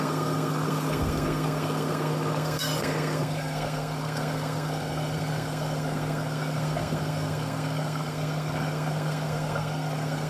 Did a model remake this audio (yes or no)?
yes